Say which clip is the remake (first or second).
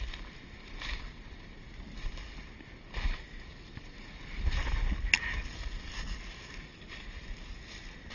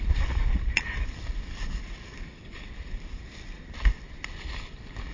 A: second